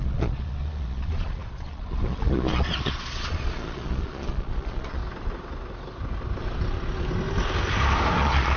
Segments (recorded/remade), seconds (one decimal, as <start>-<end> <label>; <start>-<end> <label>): 0.0-5.0 remade; 5.0-8.2 recorded; 8.2-8.6 remade